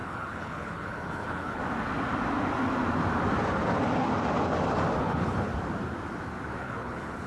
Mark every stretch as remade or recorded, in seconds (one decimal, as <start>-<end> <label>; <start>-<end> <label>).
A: 0.0-1.6 remade; 1.6-5.0 recorded; 5.0-5.5 remade; 5.5-6.6 recorded; 6.6-7.3 remade